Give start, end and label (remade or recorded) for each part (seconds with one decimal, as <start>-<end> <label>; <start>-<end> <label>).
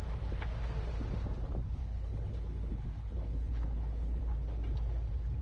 0.0-1.8 recorded; 1.8-2.3 remade; 2.3-2.7 recorded; 2.7-4.2 remade; 4.2-5.4 recorded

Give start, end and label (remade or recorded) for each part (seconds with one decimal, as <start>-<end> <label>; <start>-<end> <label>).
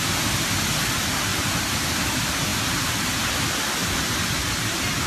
0.0-1.3 recorded; 1.3-2.0 remade; 2.0-2.5 recorded; 2.5-3.2 remade; 3.2-5.1 recorded